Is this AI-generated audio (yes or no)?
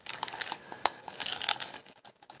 yes